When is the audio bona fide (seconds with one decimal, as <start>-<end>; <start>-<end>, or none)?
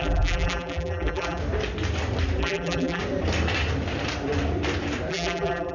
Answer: 1.4-2.4; 3.0-5.1